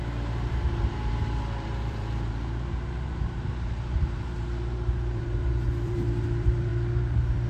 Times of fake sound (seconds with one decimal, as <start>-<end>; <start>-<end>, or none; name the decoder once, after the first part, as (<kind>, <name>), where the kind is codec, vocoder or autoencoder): 0.0-6.7 (vocoder, BigVGAN v2)